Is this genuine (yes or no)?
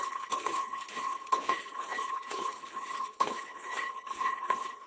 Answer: no